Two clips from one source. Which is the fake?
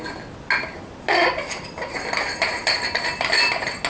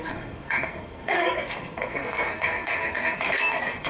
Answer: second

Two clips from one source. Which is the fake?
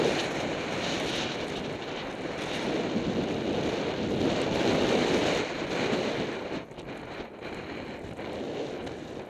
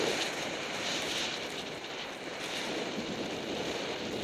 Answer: second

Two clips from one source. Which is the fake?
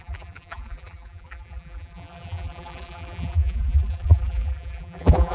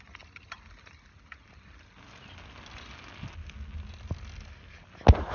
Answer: first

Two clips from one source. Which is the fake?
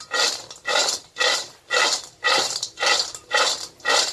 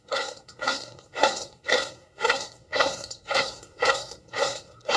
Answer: second